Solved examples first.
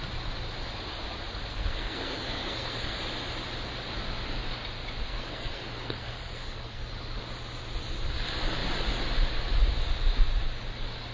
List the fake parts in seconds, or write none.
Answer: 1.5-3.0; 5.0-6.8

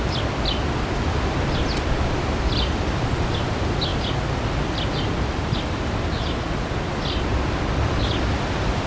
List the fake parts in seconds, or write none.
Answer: none

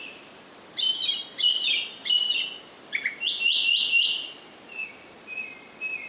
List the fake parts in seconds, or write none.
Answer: none

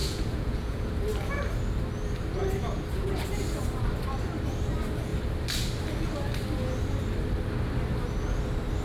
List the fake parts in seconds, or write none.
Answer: 0.0-0.9

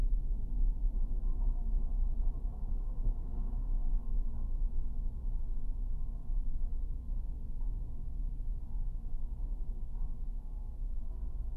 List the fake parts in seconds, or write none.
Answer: 2.7-3.5